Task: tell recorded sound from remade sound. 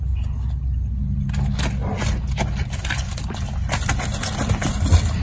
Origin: recorded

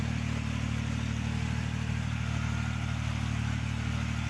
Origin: recorded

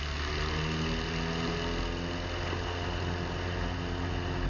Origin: recorded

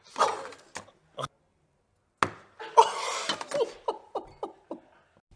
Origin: recorded